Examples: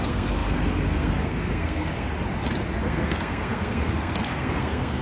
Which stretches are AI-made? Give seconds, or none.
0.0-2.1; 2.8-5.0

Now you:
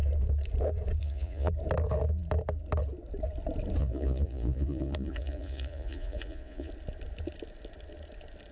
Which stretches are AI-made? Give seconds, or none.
1.0-1.5; 3.8-6.7

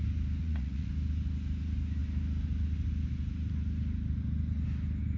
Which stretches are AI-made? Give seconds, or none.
0.4-0.9

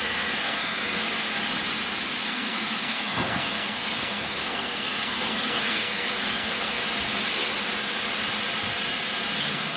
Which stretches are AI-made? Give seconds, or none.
0.0-1.0; 2.2-6.8; 9.4-9.8

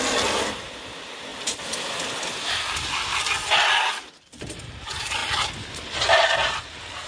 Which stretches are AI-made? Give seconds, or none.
none

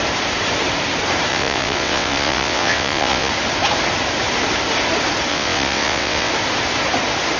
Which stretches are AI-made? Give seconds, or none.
1.3-3.3; 5.3-6.3

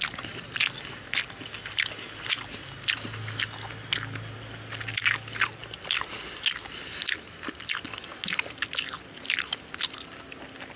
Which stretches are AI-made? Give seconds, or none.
5.6-6.1

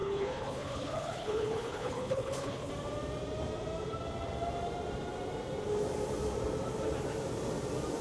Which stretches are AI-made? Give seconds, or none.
0.0-2.7